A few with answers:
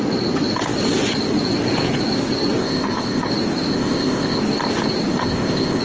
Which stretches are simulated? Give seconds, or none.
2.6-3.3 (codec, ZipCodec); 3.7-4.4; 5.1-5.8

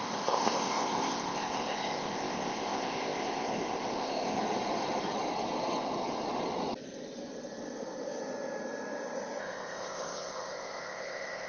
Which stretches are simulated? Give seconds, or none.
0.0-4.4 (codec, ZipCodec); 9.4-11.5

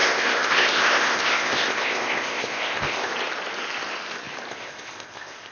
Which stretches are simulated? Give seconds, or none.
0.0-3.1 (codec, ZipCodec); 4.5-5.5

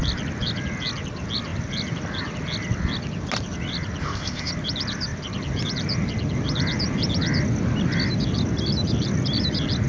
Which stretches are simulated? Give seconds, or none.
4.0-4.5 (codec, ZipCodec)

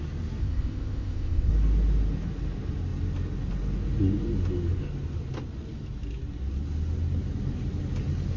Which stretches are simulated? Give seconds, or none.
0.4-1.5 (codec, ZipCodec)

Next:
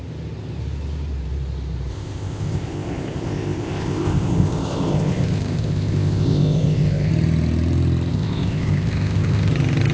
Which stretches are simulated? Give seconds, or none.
1.9-7.1 (codec, ZipCodec); 8.1-9.5

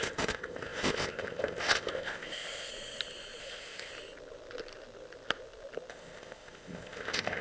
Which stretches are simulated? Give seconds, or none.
0.0-2.7 (codec, ZipCodec); 3.4-3.9; 5.9-7.4

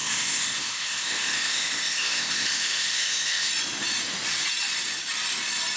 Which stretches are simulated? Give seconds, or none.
0.0-3.5 (codec, ZipCodec)